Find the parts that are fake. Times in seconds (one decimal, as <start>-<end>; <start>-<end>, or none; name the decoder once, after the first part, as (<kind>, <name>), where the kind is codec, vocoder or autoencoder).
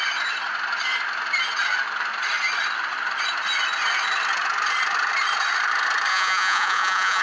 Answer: 6.1-7.2 (vocoder, Vocos)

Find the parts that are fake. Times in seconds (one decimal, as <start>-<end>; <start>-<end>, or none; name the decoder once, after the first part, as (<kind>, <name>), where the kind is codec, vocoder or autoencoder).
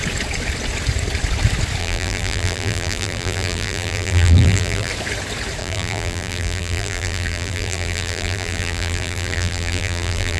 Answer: 1.8-4.9 (vocoder, BigVGAN v2); 5.6-10.4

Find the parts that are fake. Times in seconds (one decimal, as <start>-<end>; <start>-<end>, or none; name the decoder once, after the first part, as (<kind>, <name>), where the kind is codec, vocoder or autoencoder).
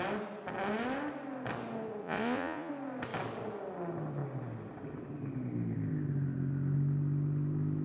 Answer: 2.0-2.7 (vocoder, Vocos)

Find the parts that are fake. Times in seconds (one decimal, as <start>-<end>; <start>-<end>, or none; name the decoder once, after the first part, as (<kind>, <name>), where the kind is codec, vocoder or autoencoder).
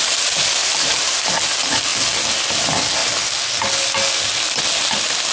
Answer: 0.6-1.1 (vocoder, BigVGAN v2)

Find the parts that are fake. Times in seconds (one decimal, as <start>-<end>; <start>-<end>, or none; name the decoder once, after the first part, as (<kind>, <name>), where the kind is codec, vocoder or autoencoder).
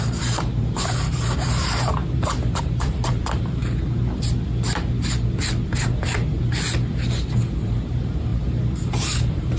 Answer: 0.0-3.6 (vocoder, BigVGAN v2); 7.4-9.6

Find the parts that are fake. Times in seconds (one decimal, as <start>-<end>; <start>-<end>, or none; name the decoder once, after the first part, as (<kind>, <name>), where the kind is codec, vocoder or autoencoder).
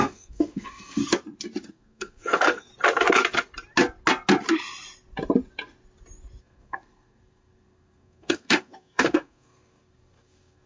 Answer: 0.0-1.0 (codec, SNAC); 1.7-2.7; 6.4-10.7